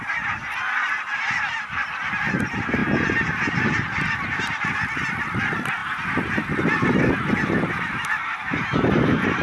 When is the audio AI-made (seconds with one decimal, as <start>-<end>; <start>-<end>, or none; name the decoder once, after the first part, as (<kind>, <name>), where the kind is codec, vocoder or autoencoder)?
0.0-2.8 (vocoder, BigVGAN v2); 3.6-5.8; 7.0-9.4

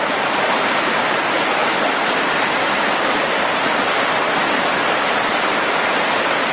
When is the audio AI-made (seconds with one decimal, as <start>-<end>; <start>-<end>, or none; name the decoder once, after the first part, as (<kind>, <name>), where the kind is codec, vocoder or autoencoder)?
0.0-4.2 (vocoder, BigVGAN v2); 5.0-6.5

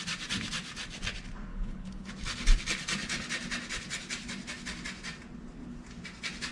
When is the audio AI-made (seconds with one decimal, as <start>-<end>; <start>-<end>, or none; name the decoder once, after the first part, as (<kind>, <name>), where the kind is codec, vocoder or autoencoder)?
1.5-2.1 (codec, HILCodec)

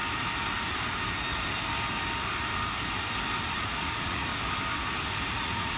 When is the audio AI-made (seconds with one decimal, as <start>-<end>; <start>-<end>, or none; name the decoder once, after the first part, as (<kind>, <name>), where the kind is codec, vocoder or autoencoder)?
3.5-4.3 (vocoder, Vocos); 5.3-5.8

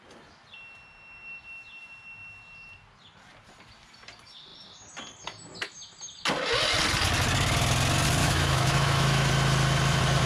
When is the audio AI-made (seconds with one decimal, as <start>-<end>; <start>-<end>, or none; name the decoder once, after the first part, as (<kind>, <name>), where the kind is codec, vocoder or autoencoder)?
8.2-9.3 (autoencoder, DAC-VAE)